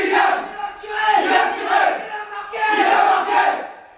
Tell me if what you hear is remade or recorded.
recorded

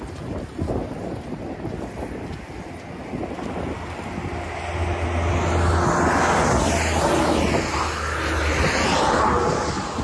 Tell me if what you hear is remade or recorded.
recorded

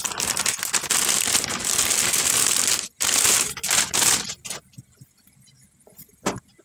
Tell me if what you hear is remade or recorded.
recorded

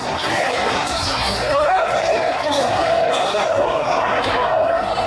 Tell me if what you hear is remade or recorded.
remade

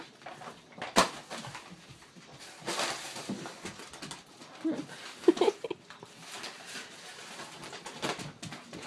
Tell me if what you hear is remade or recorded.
recorded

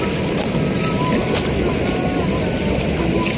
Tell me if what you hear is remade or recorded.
recorded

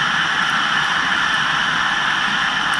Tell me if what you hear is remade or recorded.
recorded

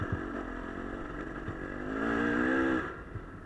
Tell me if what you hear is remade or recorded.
recorded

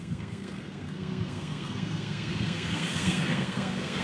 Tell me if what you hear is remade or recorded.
remade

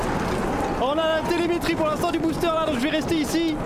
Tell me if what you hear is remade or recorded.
recorded